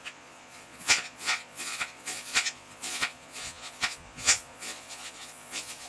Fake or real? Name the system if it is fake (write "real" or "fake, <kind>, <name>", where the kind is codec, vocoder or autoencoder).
fake, vocoder, Vocos